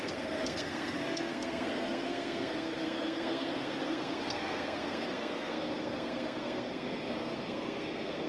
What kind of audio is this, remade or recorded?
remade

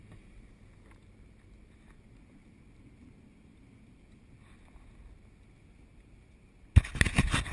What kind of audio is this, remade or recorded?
recorded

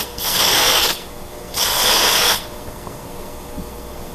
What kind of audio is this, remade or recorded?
remade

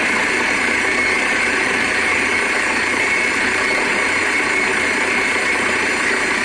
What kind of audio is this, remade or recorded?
remade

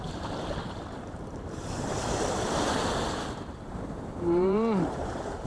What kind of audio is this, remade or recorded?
remade